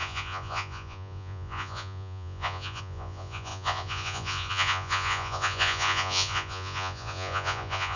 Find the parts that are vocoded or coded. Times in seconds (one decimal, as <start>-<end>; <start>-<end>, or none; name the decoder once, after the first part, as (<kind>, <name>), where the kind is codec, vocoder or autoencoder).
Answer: 0.0-8.0 (vocoder, Vocos)